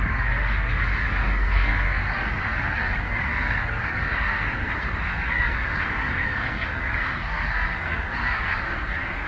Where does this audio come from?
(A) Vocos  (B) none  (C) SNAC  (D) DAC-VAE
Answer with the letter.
C